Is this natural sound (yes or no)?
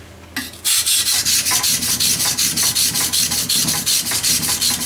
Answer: yes